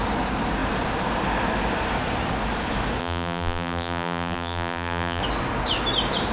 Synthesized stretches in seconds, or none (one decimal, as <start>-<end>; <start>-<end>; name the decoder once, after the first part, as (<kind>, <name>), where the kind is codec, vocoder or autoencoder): 3.0-5.2 (vocoder, BigVGAN v2)